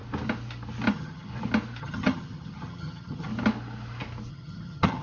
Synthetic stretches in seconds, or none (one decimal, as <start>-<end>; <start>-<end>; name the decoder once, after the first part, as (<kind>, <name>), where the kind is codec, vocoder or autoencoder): 0.9-1.3 (vocoder, HiFi-GAN); 1.8-3.3; 4.3-5.0